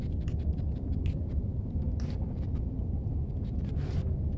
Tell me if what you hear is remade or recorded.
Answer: recorded